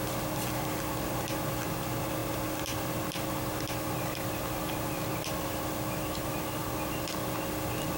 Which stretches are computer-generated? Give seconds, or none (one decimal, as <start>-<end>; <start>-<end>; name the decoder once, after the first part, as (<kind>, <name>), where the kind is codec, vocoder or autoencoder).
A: none